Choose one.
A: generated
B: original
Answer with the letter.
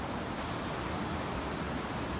B